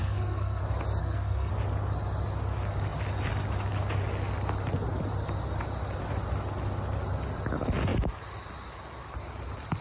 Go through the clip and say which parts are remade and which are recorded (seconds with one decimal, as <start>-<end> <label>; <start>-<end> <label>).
0.0-0.6 remade; 0.6-1.0 recorded; 1.0-1.5 remade; 1.5-9.8 recorded